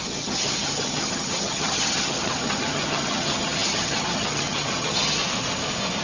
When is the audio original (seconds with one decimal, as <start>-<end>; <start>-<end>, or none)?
5.2-6.0

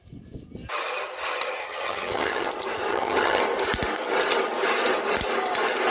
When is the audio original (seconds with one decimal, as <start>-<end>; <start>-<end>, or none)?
0.0-1.6; 2.5-2.9; 3.4-5.9

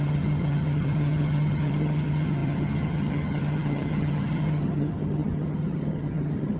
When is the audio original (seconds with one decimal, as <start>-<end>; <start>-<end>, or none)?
none

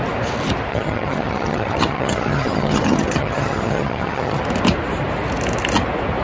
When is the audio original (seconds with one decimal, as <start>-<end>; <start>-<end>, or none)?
0.0-0.7; 4.4-6.2